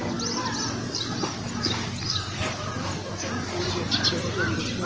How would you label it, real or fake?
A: real